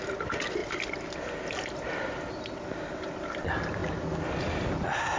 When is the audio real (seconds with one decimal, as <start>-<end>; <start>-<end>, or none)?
0.0-5.2